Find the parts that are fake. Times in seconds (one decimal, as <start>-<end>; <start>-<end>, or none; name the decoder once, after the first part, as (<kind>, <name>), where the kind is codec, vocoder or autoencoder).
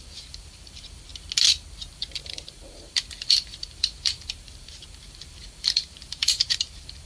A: 0.0-1.1 (vocoder, BigVGAN v2); 1.9-7.0